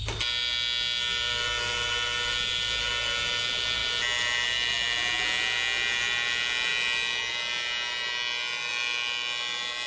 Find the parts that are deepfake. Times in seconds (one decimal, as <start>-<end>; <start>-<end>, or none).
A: none